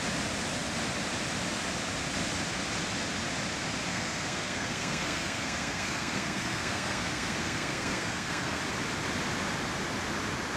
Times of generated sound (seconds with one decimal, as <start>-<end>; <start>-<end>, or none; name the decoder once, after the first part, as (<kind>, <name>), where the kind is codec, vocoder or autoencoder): 3.9-8.6 (codec, SNAC)